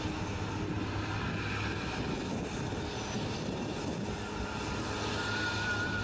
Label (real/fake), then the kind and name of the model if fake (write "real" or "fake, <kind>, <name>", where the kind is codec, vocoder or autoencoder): real